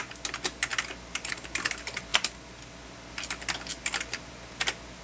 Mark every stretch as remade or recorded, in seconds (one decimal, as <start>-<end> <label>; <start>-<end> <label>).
0.0-5.0 recorded